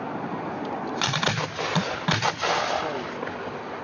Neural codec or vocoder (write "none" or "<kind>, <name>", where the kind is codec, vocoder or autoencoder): none